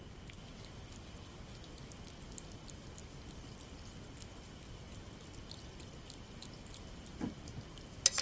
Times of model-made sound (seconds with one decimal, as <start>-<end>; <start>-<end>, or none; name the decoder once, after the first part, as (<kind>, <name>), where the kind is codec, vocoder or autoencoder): none